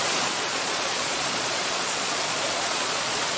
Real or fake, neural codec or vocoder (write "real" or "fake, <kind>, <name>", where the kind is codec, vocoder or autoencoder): fake, vocoder, Vocos